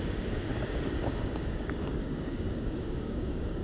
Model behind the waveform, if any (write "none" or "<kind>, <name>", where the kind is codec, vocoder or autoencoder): codec, DAC